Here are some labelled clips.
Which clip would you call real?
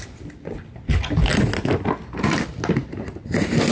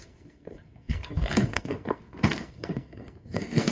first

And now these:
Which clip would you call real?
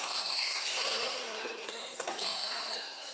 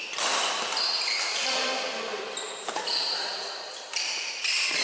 second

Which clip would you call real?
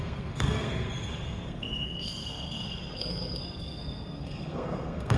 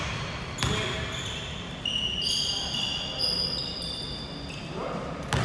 second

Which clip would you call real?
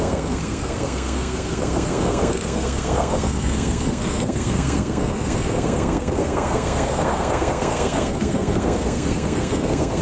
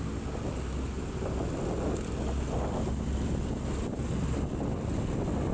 second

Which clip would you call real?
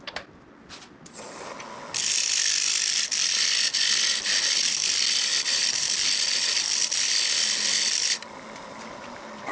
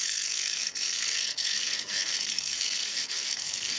first